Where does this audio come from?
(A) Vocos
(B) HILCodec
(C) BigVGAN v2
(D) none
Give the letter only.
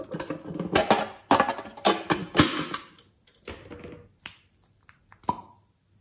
D